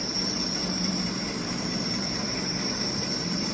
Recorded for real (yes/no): no